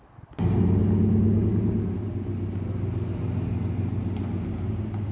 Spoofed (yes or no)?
no